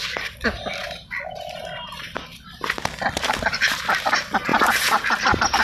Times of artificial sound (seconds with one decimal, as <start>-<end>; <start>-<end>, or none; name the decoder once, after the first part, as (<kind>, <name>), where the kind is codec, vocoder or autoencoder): 0.0-2.3 (vocoder, BigVGAN v2); 3.2-5.6